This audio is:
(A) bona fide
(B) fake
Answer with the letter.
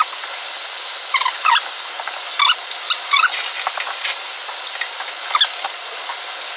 A